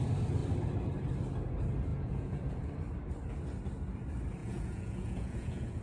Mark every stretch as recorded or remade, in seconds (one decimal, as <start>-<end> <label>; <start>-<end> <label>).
0.0-1.9 recorded; 1.9-2.7 remade; 2.7-4.4 recorded; 4.4-5.8 remade